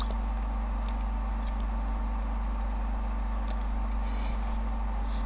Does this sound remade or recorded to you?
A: recorded